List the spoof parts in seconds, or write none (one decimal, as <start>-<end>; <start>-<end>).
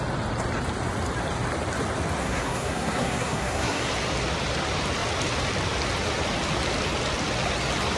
2.2-3.9